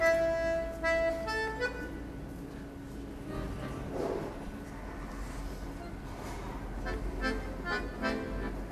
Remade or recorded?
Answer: recorded